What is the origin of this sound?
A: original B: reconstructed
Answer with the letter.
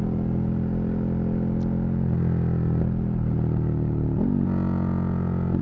A